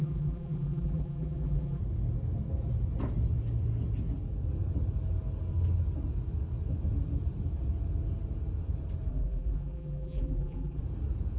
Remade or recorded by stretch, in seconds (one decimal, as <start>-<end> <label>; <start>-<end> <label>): 0.0-1.8 remade; 1.8-9.1 recorded; 9.1-10.8 remade; 10.8-11.4 recorded